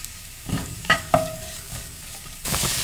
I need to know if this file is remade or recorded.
remade